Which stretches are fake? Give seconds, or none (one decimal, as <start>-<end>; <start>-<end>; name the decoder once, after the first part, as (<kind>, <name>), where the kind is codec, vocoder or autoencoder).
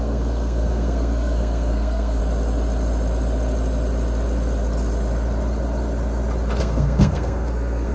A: 0.0-2.2 (codec, SNAC); 6.6-7.9